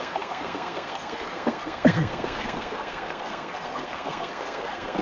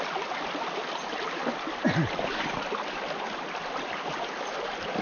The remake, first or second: first